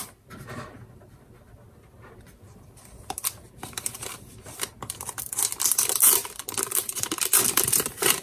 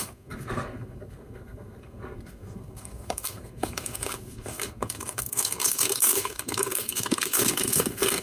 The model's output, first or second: second